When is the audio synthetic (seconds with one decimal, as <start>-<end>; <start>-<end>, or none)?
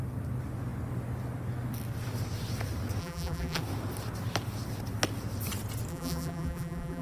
3.0-3.6; 5.9-7.0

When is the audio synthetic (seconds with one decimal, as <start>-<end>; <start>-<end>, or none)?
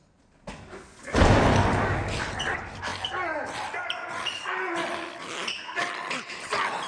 none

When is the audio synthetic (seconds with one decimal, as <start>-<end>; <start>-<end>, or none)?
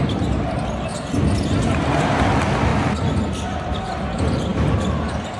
none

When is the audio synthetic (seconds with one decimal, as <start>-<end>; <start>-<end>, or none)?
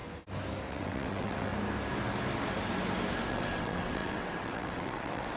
0.7-1.5; 3.3-5.4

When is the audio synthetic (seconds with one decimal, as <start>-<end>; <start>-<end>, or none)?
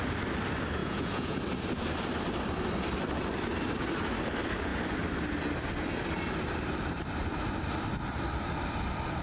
0.8-1.4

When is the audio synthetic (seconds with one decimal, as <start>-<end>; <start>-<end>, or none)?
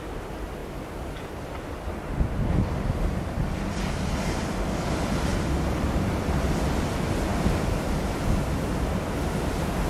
0.6-3.8; 5.3-6.2; 7.3-7.9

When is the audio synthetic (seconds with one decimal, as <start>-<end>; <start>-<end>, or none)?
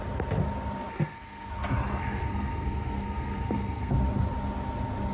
0.9-1.5; 2.0-3.9